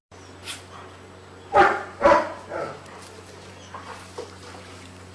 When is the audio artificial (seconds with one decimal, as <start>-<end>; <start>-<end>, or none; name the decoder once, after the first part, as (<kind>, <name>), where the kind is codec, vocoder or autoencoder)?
none